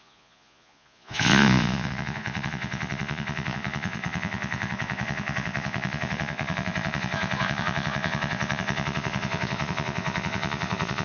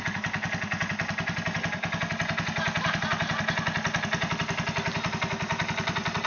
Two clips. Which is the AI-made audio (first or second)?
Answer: first